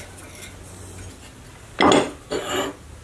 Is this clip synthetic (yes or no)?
no